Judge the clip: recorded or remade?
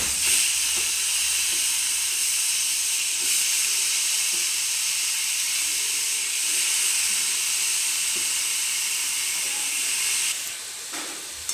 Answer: remade